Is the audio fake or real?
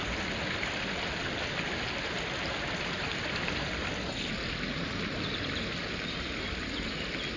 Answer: real